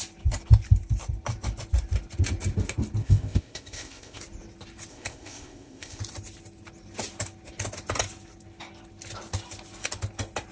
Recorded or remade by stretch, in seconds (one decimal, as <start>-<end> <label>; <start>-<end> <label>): 0.0-3.0 recorded; 3.0-4.2 remade; 4.2-4.9 recorded; 4.9-6.0 remade; 6.0-10.5 recorded